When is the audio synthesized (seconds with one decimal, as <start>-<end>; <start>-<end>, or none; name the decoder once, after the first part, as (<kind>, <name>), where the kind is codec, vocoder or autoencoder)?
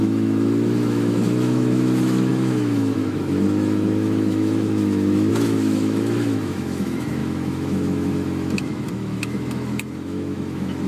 0.0-10.9 (autoencoder, DAC-VAE)